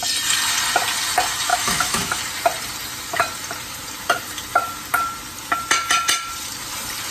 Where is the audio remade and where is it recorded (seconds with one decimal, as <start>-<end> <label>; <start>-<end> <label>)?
0.0-1.5 recorded; 1.5-2.2 remade; 2.2-7.1 recorded